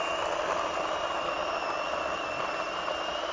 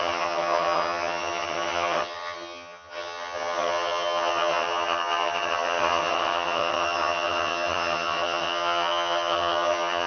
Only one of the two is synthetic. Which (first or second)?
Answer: second